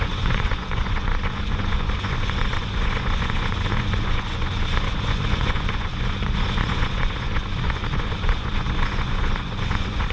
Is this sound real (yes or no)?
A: no